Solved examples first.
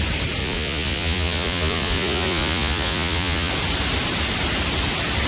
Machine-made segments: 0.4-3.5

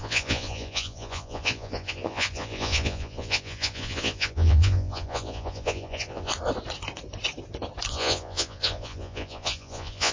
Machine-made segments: 0.0-6.3; 7.9-10.1

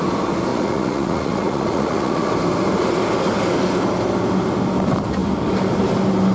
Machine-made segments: 0.5-2.3

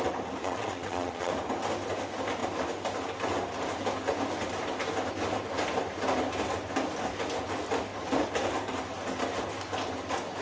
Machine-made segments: 0.4-1.3

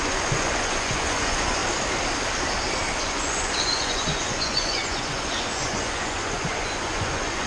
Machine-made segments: 0.0-1.6; 3.0-7.5

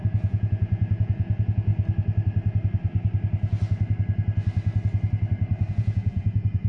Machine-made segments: 0.0-1.7; 5.7-6.7

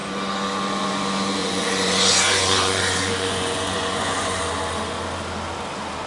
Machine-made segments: 1.4-4.4

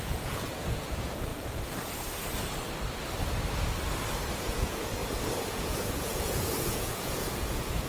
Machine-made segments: 0.0-1.3; 4.4-5.0; 5.5-7.9